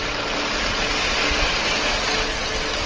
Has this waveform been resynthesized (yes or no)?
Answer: no